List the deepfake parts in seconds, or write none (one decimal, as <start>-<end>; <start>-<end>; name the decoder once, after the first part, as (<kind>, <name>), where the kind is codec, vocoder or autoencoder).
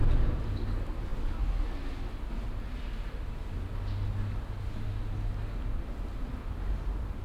none